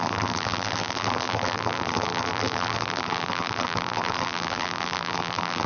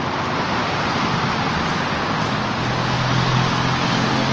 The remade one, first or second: first